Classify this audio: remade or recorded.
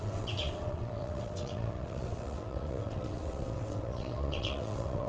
remade